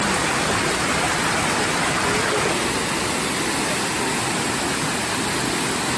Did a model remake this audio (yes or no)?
no